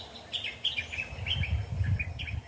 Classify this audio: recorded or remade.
recorded